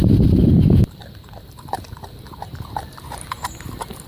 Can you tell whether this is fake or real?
fake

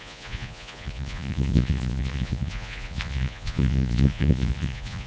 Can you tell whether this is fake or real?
fake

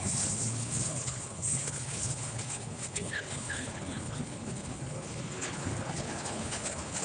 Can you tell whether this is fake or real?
fake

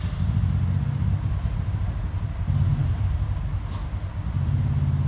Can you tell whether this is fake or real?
real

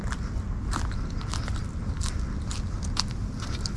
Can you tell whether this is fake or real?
real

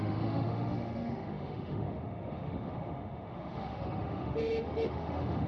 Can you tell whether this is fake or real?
fake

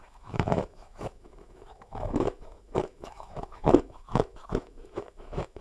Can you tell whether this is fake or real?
fake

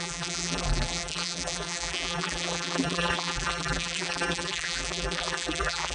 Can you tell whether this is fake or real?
fake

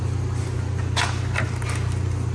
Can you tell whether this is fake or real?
real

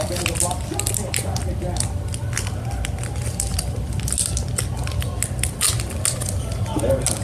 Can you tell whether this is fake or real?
real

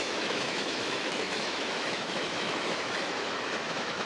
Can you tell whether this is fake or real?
fake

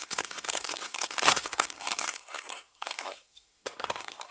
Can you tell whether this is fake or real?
fake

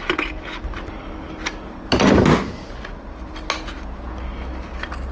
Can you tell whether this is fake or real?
real